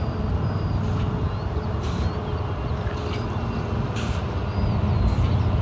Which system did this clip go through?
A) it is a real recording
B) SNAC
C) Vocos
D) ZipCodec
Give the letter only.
A